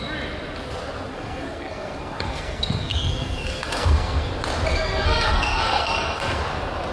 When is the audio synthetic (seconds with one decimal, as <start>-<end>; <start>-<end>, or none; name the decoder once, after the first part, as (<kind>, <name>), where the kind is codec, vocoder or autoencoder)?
1.1-4.3 (codec, SNAC); 4.7-6.4